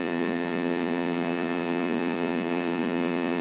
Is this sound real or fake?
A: fake